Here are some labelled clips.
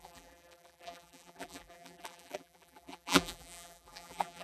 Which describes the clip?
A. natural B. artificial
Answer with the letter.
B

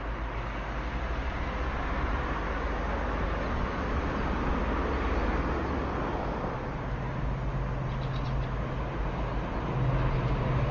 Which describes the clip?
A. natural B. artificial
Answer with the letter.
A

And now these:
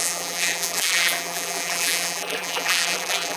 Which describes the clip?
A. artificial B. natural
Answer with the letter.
A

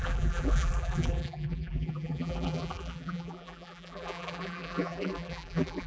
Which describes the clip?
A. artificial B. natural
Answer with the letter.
A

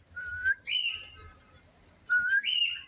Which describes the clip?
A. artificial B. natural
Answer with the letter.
A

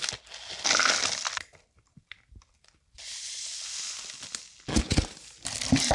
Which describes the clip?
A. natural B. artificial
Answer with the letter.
A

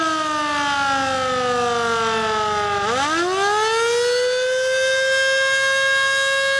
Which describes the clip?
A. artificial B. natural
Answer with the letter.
B